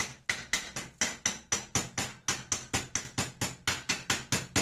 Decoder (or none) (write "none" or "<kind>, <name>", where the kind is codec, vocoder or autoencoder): none